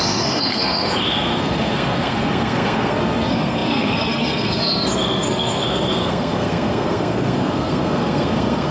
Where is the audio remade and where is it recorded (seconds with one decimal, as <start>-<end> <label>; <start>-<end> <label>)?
0.0-8.7 remade